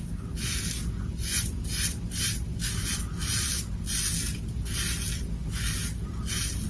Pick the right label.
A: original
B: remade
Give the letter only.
A